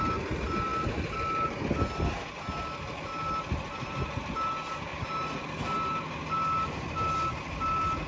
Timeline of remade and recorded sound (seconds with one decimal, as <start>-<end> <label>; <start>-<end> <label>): 0.0-4.9 recorded; 4.9-5.4 remade; 5.4-8.1 recorded